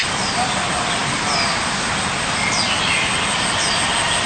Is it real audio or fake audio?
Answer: real